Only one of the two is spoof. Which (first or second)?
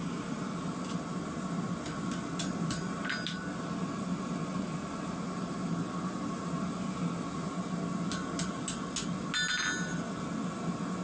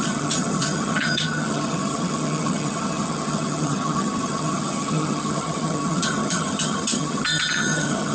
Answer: second